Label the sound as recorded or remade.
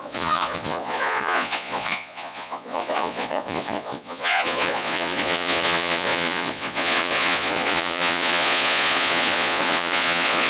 remade